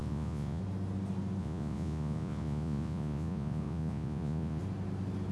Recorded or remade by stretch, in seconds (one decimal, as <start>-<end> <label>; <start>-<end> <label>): 0.0-0.6 remade; 0.6-1.4 recorded; 1.4-4.6 remade; 4.6-5.3 recorded